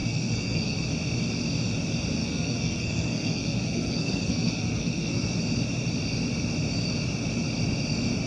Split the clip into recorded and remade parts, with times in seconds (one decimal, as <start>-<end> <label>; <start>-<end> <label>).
0.0-0.9 remade; 0.9-2.2 recorded; 2.2-5.4 remade; 5.4-8.3 recorded